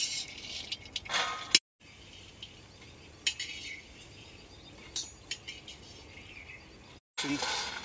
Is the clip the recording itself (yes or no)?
yes